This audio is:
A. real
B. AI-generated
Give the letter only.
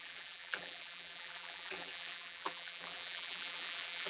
B